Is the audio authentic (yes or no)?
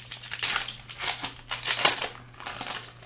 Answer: yes